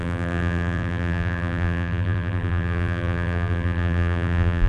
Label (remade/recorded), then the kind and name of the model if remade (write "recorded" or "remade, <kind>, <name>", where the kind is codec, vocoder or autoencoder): remade, vocoder, BigVGAN v2